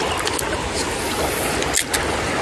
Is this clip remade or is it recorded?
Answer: recorded